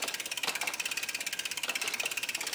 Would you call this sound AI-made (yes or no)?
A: no